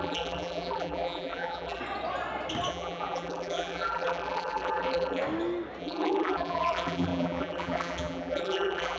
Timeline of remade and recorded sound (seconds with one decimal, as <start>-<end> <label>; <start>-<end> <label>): 0.0-1.8 remade; 1.8-2.7 recorded; 2.7-5.2 remade; 5.2-5.8 recorded; 5.8-9.0 remade